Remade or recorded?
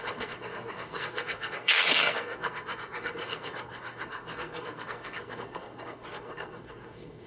remade